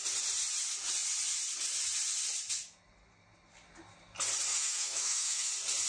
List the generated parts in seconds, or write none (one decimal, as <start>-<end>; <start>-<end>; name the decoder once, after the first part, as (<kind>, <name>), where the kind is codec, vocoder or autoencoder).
4.5-5.5 (autoencoder, DAC-VAE)